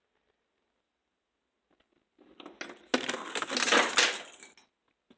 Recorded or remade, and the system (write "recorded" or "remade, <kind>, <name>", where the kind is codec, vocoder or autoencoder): recorded